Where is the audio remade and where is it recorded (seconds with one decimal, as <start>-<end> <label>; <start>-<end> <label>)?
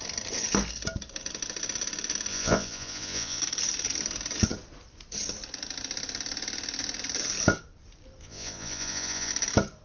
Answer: 0.0-2.3 recorded; 2.3-3.4 remade; 3.4-8.2 recorded; 8.2-9.3 remade; 9.3-9.8 recorded